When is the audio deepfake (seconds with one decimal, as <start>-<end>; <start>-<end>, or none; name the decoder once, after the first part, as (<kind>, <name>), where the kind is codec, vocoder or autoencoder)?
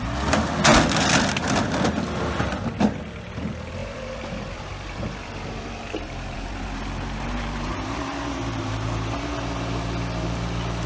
3.8-8.9 (vocoder, BigVGAN v2)